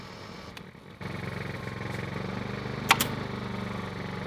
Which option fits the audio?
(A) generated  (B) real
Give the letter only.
B